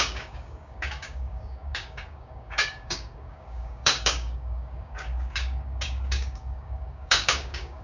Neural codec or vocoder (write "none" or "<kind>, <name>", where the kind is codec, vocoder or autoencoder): codec, DAC